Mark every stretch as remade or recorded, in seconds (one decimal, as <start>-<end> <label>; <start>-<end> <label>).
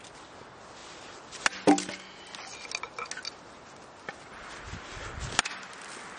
0.0-6.2 recorded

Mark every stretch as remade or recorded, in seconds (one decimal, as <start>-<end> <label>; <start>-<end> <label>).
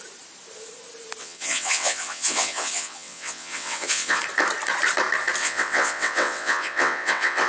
0.0-1.2 recorded; 1.2-4.2 remade; 4.2-5.4 recorded; 5.4-7.5 remade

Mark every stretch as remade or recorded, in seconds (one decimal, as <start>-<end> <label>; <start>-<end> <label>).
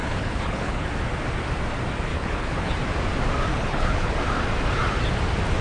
0.0-0.9 remade; 0.9-2.1 recorded; 2.1-2.8 remade; 2.8-3.5 recorded; 3.5-4.1 remade; 4.1-5.6 recorded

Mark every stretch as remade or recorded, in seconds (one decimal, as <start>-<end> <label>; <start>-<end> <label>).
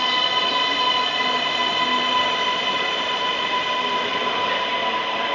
0.0-5.3 recorded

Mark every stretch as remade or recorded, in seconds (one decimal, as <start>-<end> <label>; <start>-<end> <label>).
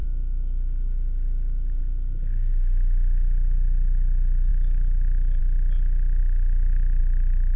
0.0-1.8 remade; 1.8-4.5 recorded; 4.5-5.4 remade; 5.4-7.6 recorded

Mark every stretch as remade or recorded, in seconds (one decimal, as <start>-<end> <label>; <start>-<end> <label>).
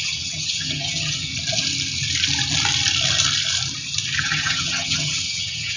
0.0-1.3 remade; 1.3-4.2 recorded; 4.2-5.8 remade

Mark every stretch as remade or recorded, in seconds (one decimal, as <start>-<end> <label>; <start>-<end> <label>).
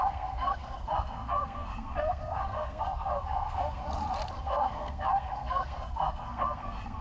0.0-3.8 remade; 3.8-4.4 recorded; 4.4-7.0 remade